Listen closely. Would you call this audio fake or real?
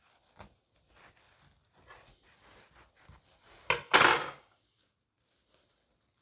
real